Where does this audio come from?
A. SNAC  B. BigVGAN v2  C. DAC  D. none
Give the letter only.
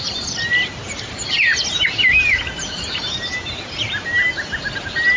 D